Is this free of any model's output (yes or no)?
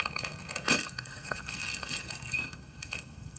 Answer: no